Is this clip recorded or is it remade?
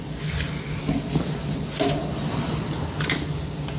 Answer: recorded